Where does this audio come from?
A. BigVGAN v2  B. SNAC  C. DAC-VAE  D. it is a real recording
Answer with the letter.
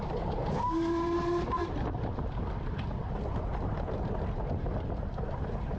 D